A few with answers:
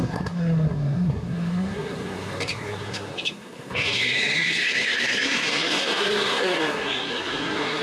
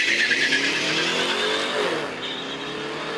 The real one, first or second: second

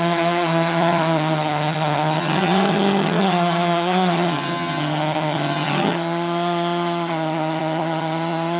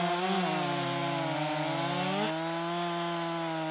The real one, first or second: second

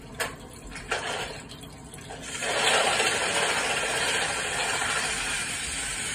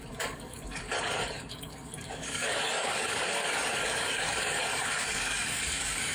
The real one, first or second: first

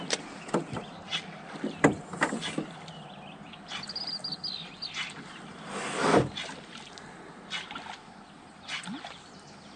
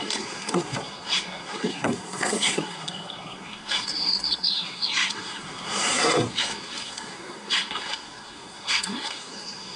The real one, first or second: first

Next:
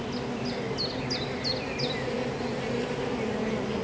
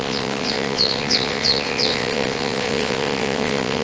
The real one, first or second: first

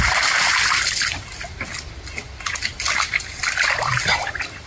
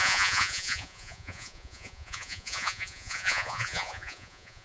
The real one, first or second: first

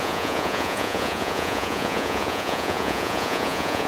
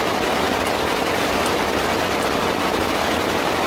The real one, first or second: second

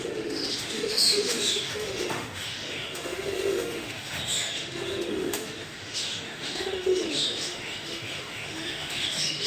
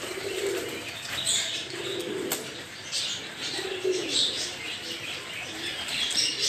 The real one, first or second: second